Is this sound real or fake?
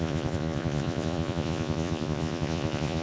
fake